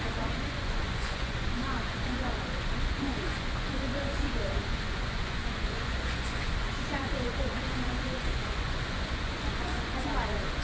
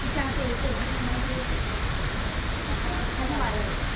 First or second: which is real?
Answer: second